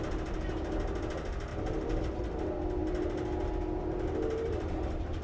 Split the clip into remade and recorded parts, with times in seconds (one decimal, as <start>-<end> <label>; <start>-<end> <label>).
0.0-5.2 recorded